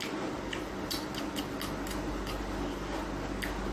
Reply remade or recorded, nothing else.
recorded